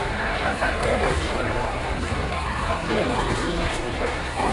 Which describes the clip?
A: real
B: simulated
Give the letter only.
B